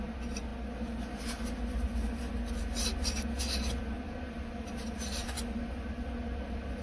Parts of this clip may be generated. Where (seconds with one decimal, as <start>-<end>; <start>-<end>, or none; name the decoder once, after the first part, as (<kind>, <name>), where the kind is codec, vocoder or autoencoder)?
none